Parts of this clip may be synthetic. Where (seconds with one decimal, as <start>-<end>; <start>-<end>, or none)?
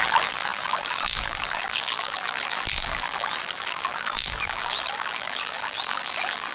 0.0-6.5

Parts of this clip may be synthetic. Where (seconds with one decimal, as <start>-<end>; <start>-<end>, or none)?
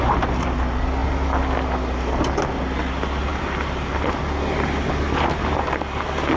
3.3-4.2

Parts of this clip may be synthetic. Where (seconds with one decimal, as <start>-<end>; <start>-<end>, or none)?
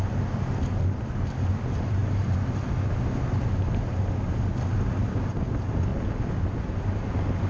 none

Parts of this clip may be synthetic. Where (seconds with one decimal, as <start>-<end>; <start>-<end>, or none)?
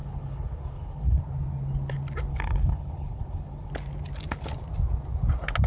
0.0-1.2; 2.3-3.7